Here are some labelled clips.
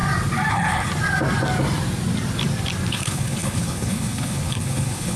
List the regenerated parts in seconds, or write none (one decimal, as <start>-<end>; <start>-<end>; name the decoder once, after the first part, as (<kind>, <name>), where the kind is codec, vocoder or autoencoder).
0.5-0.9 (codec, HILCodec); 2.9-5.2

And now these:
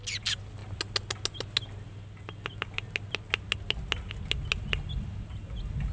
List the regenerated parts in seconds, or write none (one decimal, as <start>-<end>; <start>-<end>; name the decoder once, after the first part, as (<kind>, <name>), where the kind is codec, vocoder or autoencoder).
none

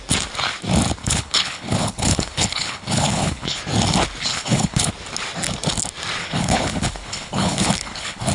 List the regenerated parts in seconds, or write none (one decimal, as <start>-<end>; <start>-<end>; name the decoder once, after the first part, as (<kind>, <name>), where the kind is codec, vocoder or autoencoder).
1.0-3.6 (codec, HILCodec); 4.3-4.9; 6.2-8.3